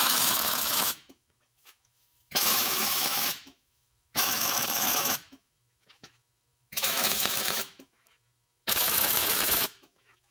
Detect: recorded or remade remade